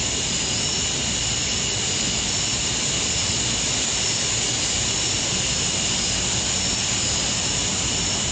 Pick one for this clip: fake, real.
real